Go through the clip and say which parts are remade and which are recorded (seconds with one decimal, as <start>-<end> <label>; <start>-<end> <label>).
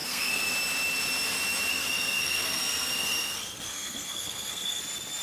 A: 0.0-0.5 remade; 0.5-1.7 recorded; 1.7-4.8 remade; 4.8-5.2 recorded